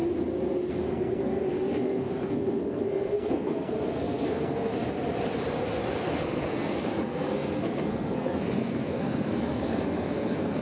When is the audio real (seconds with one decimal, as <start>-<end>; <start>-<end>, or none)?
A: 0.0-0.7; 4.7-6.0